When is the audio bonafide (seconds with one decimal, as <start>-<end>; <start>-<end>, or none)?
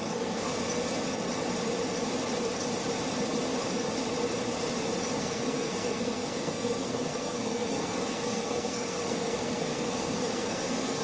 0.5-5.2